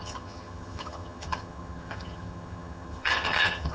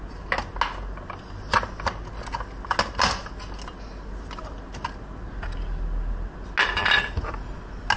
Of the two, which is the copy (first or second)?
first